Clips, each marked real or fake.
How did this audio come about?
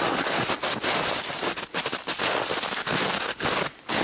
real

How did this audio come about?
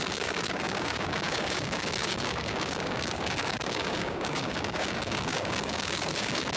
fake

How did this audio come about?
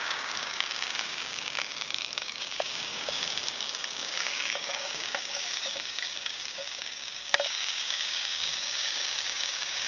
fake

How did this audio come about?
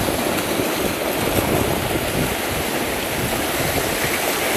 real